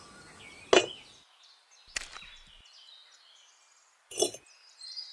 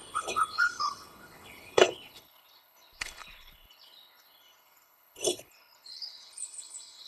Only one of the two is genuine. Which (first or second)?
first